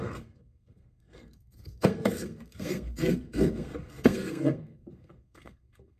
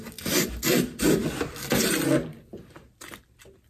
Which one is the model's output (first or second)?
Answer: first